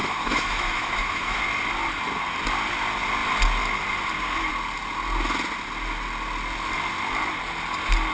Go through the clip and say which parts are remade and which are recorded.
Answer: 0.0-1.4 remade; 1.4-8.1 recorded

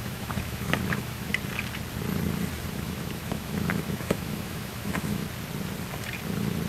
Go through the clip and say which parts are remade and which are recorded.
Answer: 0.0-1.3 remade; 1.3-2.7 recorded; 2.7-5.2 remade; 5.2-6.7 recorded

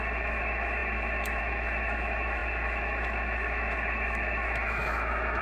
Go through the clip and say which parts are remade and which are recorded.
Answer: 0.0-5.4 remade

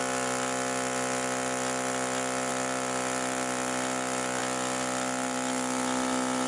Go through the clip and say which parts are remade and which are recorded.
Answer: 0.0-6.5 recorded